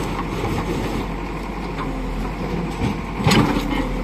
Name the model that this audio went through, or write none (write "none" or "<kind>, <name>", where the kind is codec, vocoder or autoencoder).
none